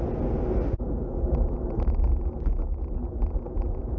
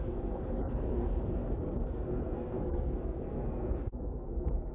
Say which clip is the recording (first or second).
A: first